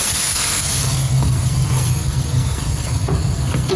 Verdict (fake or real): fake